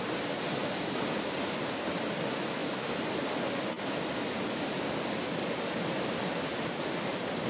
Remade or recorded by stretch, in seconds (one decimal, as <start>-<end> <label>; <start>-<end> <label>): 0.0-0.6 recorded; 0.6-1.4 remade; 1.4-7.5 recorded